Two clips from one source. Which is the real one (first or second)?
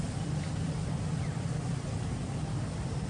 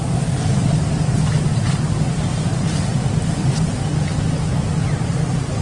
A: second